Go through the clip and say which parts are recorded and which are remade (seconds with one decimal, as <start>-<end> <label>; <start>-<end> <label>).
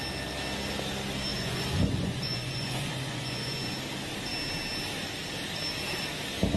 0.0-1.3 recorded; 1.3-3.7 remade; 3.7-6.6 recorded